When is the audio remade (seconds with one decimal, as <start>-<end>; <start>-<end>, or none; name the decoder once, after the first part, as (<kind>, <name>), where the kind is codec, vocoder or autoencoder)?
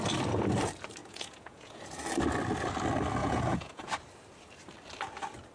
1.0-1.8 (vocoder, Vocos); 3.2-3.9